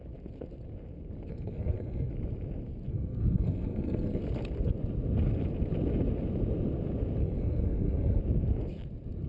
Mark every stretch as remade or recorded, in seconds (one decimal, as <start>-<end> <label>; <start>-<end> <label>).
0.0-1.3 recorded; 1.3-2.1 remade; 2.1-2.9 recorded; 2.9-4.2 remade; 4.2-7.2 recorded; 7.2-8.2 remade; 8.2-9.3 recorded